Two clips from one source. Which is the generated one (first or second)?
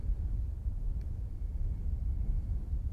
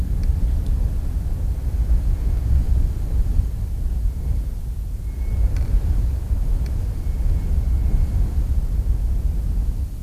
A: first